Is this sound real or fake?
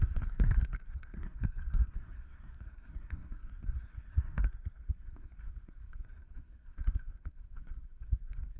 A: fake